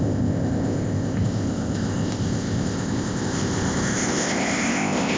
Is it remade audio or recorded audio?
remade